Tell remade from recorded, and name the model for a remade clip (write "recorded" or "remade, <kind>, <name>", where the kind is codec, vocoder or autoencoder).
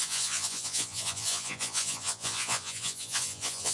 remade, vocoder, Vocos